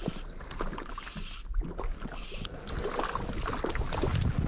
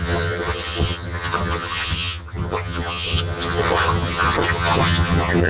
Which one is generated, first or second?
second